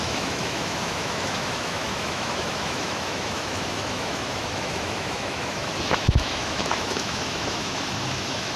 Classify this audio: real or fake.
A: fake